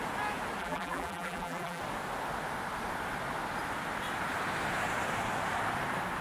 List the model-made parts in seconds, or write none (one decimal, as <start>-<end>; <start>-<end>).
0.6-1.8